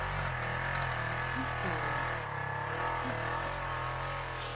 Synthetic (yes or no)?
no